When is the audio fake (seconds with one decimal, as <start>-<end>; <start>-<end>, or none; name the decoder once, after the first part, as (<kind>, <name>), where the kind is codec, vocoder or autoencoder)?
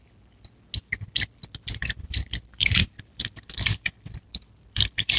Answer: 1.8-5.2 (vocoder, BigVGAN v2)